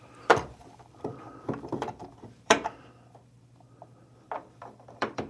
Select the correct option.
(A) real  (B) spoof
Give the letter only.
B